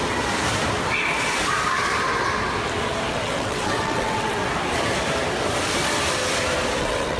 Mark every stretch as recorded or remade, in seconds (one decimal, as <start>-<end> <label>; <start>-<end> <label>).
0.0-3.1 recorded; 3.1-4.4 remade; 4.4-6.8 recorded; 6.8-7.2 remade